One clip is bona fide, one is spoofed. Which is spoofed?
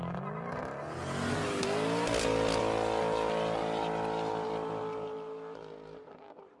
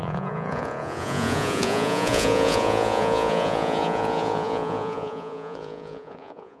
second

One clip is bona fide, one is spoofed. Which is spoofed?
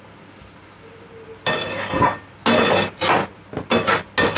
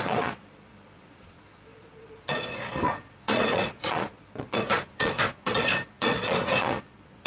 second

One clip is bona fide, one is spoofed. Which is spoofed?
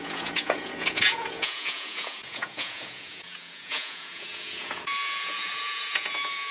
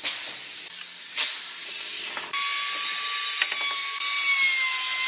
first